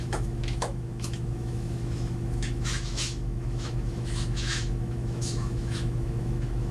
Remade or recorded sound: remade